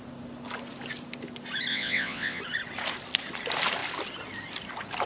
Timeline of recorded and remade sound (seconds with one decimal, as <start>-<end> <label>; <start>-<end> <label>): 0.0-1.7 recorded; 1.7-2.4 remade; 2.4-5.1 recorded